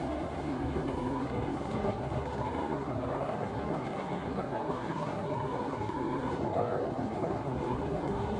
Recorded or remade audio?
remade